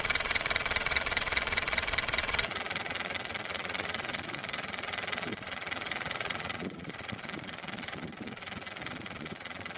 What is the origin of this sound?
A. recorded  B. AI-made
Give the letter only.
B